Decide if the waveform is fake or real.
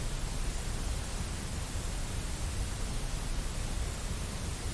real